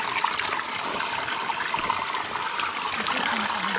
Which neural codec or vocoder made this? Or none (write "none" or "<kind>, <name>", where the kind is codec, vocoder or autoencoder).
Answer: none